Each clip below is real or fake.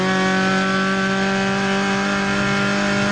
real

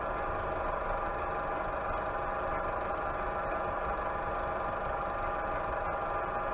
real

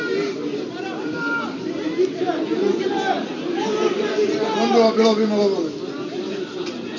real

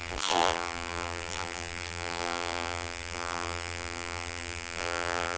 fake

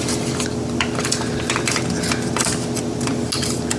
real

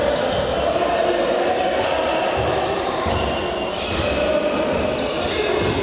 real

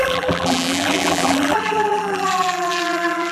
fake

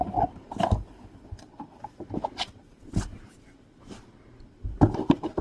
fake